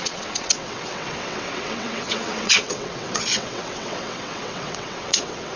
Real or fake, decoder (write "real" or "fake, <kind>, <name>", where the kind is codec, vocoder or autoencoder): fake, vocoder, WaveNeXt